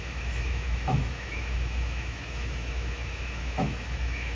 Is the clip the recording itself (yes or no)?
no